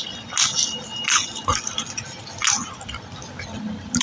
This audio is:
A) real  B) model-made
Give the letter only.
A